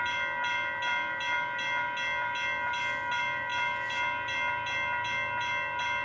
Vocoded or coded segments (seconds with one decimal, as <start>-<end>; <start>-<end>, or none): none